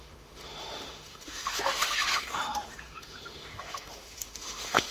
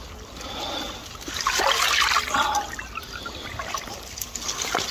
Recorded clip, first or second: second